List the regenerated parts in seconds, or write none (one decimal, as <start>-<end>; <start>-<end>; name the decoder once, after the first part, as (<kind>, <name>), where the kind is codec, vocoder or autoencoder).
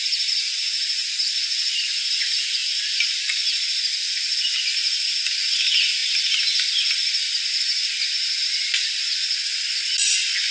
none